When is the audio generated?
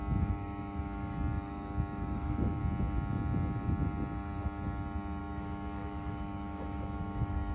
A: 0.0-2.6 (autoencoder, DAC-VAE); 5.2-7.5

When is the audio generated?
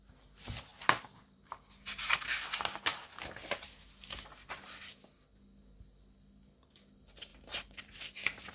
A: 0.7-1.5 (vocoder, BigVGAN v2); 7.3-8.0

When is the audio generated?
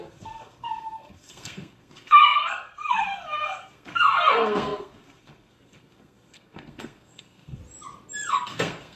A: 0.0-7.6 (codec, SNAC); 8.3-9.0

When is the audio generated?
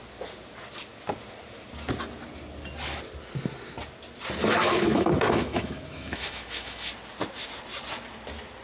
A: 4.4-6.9 (autoencoder, DAC-VAE)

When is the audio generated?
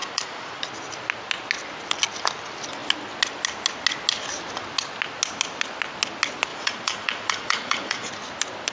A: 0.0-0.6 (vocoder, Vocos); 6.5-8.1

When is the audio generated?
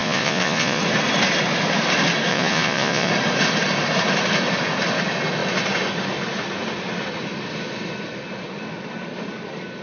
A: 0.0-0.8 (vocoder, Vocos); 2.3-3.1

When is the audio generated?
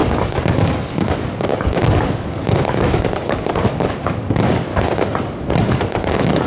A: 0.0-4.7 (codec, DAC); 5.8-6.5